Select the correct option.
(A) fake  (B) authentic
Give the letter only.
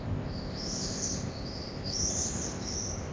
A